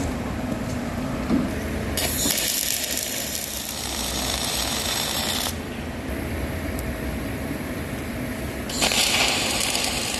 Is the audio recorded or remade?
remade